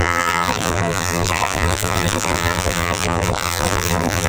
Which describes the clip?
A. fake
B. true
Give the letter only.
A